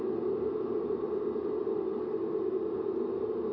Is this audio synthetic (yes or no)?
no